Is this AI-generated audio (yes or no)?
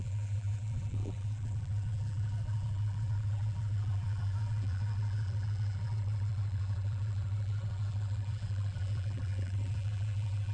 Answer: yes